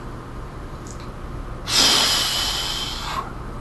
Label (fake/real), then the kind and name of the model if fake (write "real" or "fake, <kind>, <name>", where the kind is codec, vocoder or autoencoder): real